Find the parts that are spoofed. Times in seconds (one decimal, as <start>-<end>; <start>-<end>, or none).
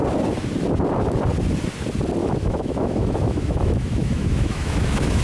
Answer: 2.2-5.2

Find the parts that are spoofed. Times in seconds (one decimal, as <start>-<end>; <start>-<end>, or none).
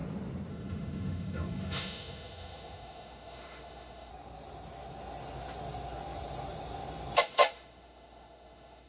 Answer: 0.5-4.1; 7.2-8.9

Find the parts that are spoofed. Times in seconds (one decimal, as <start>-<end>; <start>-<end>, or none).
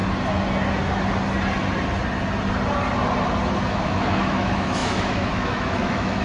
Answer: 3.7-6.2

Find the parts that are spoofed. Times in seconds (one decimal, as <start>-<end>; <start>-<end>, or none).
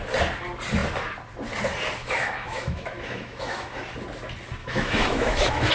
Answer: 2.0-3.8; 4.6-5.7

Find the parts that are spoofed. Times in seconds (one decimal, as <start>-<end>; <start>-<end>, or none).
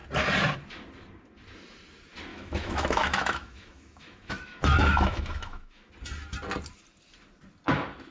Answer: 2.3-5.9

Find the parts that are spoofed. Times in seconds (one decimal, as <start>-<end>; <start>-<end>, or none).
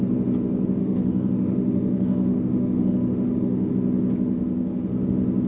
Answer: 0.8-3.7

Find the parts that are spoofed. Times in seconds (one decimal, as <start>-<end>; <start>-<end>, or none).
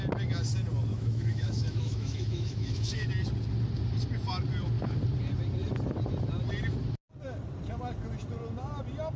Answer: 0.9-3.1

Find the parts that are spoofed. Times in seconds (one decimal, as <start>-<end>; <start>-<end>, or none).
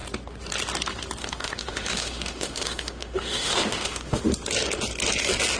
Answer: 1.2-4.2